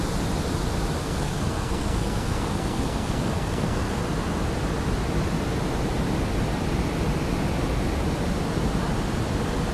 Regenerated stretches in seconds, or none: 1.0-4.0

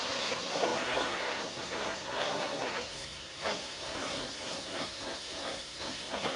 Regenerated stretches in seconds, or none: 0.0-6.4

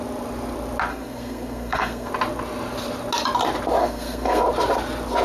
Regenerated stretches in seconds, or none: 0.9-2.1; 3.8-4.4

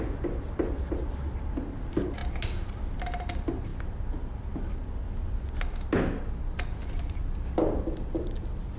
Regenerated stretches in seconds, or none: none

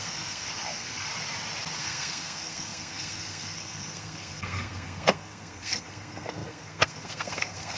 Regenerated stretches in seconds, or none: 0.0-1.1; 1.8-7.8

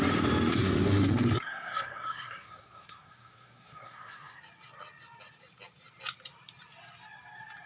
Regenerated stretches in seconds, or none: 0.5-4.4

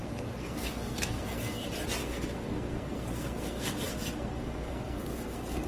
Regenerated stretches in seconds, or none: 0.0-1.6; 2.0-5.7

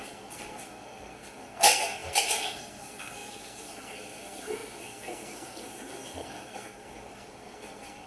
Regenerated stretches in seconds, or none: 0.0-8.1